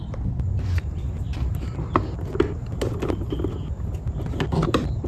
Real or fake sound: real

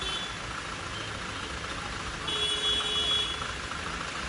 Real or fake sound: real